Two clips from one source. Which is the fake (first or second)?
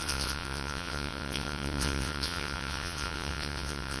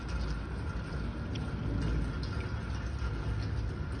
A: first